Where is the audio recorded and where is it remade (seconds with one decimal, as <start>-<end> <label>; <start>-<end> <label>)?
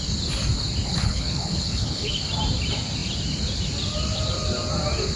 0.0-0.9 recorded; 0.9-2.2 remade; 2.2-5.2 recorded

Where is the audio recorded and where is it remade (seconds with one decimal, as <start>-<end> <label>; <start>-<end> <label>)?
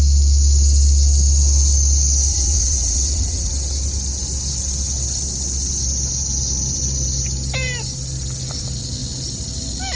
0.0-2.3 recorded; 2.3-3.5 remade; 3.5-10.0 recorded